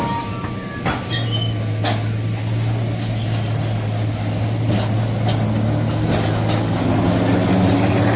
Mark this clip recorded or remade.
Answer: recorded